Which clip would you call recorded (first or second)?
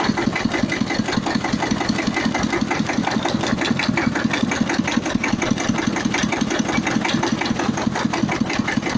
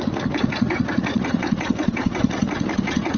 first